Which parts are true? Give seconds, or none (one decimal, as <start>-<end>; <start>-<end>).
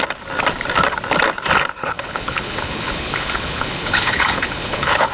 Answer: 0.0-1.8